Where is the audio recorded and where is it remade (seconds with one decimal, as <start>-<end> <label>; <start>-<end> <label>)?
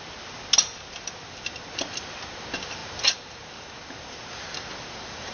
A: 0.0-5.3 recorded